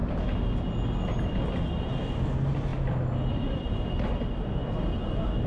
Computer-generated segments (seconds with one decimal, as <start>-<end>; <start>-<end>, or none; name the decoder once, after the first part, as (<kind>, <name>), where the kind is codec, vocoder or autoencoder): none

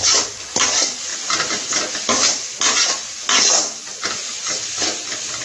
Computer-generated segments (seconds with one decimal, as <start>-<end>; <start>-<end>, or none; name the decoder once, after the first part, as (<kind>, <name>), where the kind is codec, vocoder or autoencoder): none

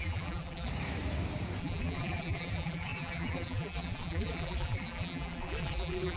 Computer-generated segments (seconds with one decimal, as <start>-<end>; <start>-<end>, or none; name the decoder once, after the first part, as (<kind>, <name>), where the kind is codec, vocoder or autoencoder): 0.0-0.7 (vocoder, BigVGAN v2); 1.6-6.2

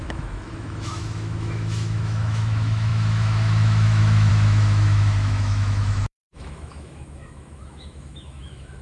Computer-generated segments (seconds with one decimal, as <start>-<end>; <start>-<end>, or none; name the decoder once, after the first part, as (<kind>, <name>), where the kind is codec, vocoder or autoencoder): 0.0-8.8 (autoencoder, DAC-VAE)

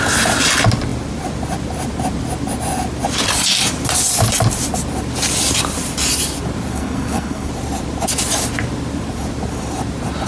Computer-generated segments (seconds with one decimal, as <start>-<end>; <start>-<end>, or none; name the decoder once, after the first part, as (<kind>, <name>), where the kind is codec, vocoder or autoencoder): 6.7-7.5 (codec, SNAC)

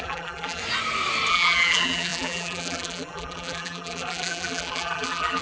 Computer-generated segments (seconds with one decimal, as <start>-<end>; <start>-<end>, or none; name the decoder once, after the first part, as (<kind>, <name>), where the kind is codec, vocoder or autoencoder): 0.0-0.6 (vocoder, BigVGAN v2); 1.3-5.4

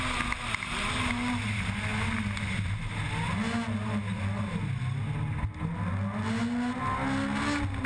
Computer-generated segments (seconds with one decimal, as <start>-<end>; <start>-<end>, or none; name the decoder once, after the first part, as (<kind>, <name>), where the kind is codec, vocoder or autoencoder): none

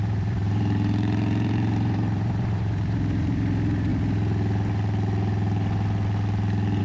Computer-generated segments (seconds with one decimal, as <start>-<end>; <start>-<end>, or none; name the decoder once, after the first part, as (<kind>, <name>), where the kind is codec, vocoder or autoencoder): 0.0-3.9 (vocoder, BigVGAN v2)